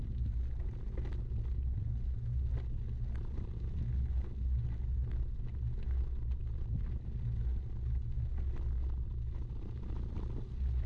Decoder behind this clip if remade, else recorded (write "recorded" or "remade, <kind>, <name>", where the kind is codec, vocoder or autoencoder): recorded